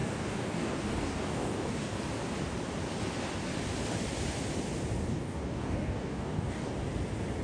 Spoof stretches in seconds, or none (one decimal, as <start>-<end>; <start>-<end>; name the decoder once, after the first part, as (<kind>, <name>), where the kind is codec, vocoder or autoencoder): 0.0-2.0 (codec, DAC); 5.1-6.7